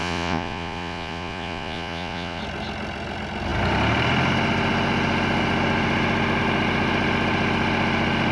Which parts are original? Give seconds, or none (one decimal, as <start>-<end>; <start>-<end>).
2.4-8.3